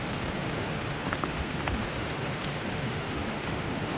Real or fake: fake